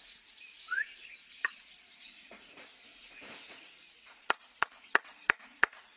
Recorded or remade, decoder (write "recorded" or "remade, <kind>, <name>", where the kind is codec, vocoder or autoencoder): remade, vocoder, Vocos